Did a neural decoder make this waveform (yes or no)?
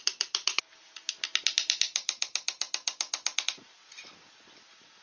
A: no